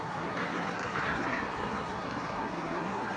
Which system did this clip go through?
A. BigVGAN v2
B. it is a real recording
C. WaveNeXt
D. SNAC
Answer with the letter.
D